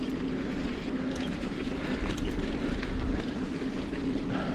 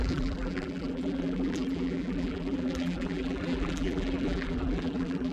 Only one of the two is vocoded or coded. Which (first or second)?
second